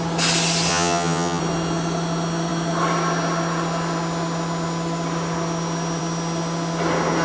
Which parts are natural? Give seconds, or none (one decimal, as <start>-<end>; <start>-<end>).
0.0-0.7; 1.4-7.2